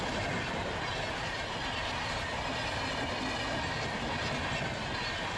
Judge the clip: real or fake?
real